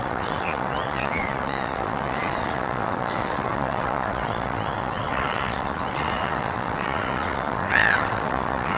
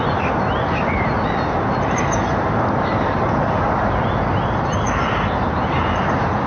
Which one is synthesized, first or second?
first